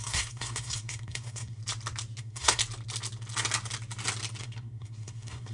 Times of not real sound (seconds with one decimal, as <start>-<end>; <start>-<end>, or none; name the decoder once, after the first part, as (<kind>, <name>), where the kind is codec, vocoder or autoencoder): 0.0-1.6 (codec, SNAC); 2.2-2.6; 4.4-5.5